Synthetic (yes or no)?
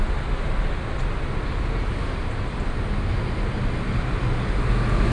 no